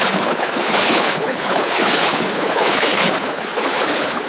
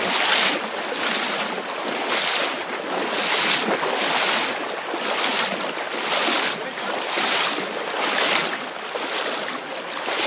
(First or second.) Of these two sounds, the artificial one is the first